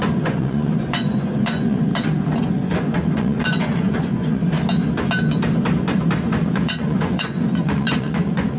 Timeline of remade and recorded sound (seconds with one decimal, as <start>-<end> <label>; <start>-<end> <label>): 0.0-1.9 remade; 1.9-2.4 recorded; 2.4-4.4 remade; 4.4-6.3 recorded; 6.3-8.6 remade